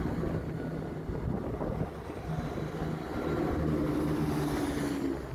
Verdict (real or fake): real